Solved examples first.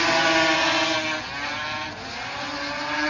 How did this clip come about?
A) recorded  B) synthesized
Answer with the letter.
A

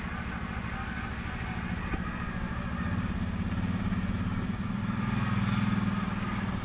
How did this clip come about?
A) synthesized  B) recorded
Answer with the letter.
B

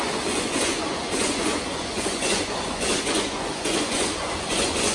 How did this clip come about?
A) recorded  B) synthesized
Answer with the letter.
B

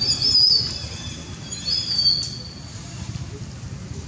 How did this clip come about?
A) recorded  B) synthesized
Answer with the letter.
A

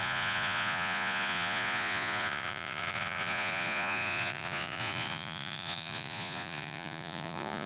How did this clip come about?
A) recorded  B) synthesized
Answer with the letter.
B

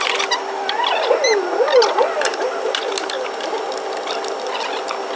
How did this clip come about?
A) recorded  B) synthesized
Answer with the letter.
A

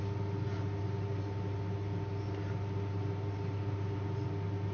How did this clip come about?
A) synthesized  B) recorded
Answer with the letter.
B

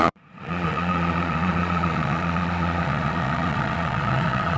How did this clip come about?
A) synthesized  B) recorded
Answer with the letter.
A